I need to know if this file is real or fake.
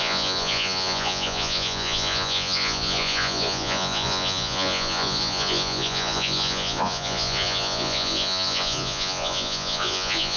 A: fake